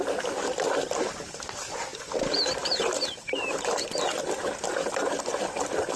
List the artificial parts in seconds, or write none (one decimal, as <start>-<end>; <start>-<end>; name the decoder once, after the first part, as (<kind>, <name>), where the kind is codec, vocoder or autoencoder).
none